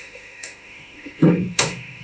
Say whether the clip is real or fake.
fake